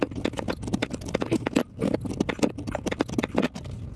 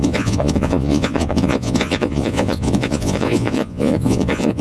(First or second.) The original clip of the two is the first